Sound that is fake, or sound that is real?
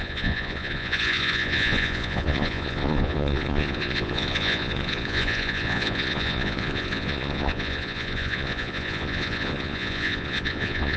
fake